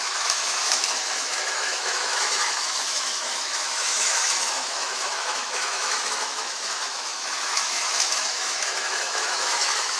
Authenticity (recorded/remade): remade